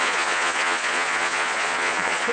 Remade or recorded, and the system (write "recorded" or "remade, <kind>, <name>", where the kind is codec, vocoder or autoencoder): remade, vocoder, Vocos